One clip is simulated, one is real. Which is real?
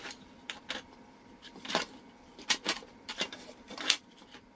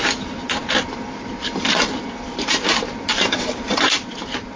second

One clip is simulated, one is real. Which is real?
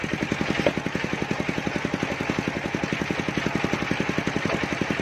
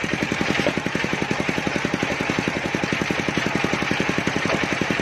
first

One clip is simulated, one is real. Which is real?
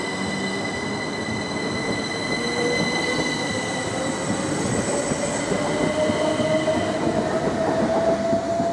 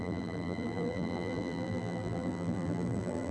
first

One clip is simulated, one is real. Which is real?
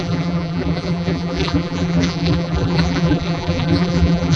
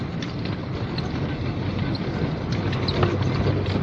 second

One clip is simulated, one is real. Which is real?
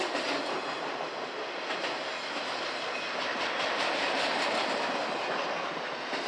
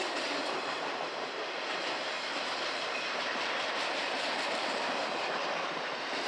first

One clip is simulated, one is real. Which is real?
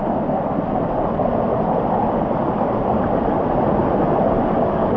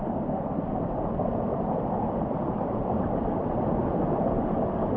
first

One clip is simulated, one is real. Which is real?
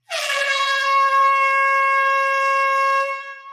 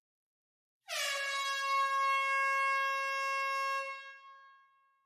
second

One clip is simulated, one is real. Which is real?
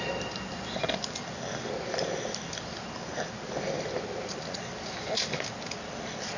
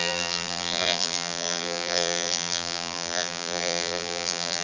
first